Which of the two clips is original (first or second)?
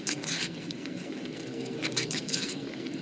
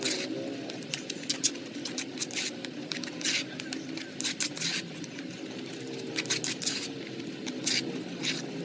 second